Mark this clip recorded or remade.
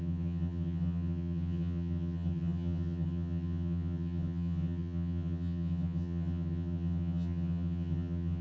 remade